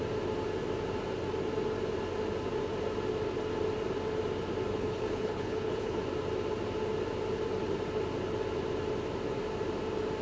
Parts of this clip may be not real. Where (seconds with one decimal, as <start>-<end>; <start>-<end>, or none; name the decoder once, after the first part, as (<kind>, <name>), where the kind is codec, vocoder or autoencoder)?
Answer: 4.7-6.0 (codec, HILCodec)